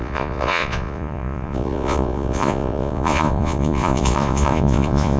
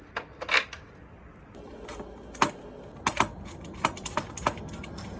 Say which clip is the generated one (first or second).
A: first